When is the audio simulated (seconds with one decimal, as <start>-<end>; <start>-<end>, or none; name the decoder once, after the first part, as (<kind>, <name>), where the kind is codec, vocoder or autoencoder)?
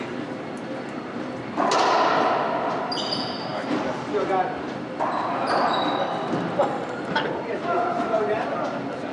none